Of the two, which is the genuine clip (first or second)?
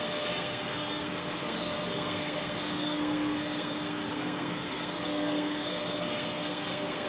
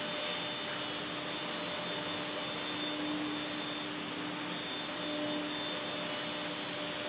second